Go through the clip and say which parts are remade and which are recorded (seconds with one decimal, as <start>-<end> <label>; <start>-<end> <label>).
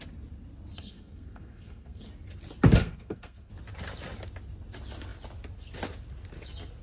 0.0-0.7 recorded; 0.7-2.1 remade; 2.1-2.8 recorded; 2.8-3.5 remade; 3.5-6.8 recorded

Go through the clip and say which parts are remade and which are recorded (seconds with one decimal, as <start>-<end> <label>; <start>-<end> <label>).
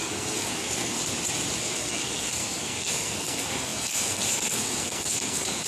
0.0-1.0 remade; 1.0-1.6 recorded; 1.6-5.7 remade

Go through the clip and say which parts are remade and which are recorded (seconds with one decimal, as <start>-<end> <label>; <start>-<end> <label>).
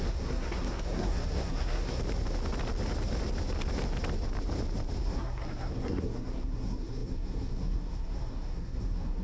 0.0-2.0 remade; 2.0-5.0 recorded; 5.0-9.2 remade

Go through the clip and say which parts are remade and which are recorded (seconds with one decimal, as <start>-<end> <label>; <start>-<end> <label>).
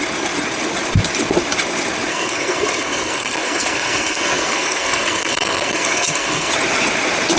0.0-2.1 recorded; 2.1-6.5 remade; 6.5-7.4 recorded